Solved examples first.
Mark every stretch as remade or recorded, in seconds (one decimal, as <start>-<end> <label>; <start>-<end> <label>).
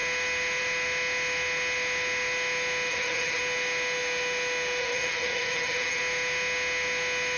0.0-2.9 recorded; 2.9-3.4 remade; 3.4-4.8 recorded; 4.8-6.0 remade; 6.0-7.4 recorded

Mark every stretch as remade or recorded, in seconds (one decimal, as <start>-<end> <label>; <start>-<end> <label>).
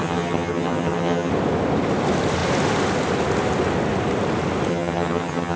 0.0-1.3 remade; 1.3-4.7 recorded; 4.7-5.6 remade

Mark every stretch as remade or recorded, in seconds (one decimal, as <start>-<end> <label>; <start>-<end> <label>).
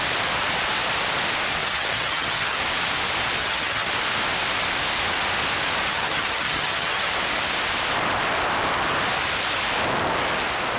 0.0-1.6 recorded; 1.6-2.6 remade; 2.6-3.4 recorded; 3.4-3.9 remade; 3.9-5.9 recorded; 5.9-7.1 remade; 7.1-10.8 recorded